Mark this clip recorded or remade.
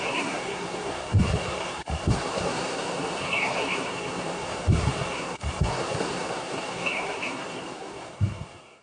remade